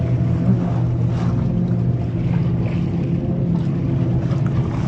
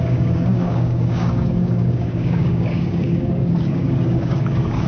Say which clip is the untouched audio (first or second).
first